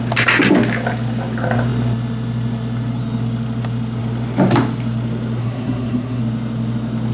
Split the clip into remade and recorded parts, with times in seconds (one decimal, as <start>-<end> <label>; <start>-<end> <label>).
0.0-5.4 recorded; 5.4-6.2 remade; 6.2-7.1 recorded

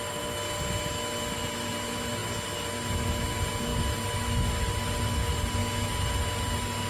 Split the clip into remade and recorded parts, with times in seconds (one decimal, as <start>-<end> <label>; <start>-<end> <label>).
0.0-6.9 recorded